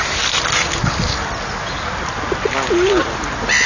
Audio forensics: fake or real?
real